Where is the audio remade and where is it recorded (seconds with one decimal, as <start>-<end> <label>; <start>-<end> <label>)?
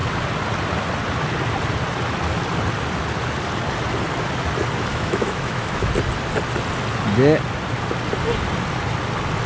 0.0-4.9 recorded; 4.9-5.9 remade; 5.9-9.5 recorded